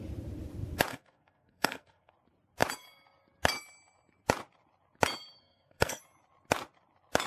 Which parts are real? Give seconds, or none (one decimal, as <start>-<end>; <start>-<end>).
0.0-0.9; 2.1-5.4; 6.0-7.3